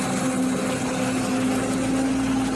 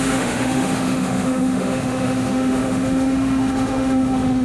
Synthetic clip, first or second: second